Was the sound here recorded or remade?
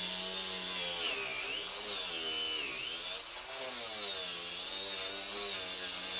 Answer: recorded